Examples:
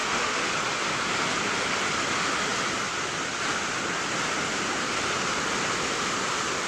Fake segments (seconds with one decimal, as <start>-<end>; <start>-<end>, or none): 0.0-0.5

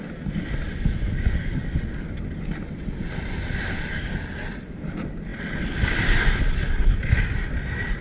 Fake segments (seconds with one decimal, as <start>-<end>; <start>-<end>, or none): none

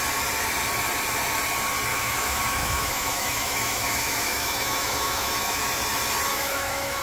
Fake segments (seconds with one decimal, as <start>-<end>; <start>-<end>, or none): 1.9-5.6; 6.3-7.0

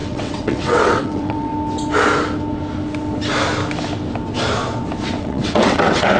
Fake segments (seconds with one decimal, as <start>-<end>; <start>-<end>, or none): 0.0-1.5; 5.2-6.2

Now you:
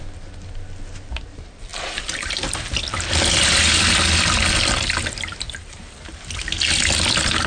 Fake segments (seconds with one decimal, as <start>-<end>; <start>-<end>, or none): 1.7-2.6

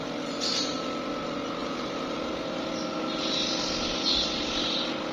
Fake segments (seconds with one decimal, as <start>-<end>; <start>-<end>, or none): 1.6-2.7

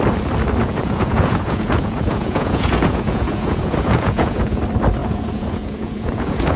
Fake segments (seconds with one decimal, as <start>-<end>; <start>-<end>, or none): 0.6-4.6; 5.0-6.6